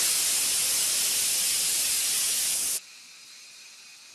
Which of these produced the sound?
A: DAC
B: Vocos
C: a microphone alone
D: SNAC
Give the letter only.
C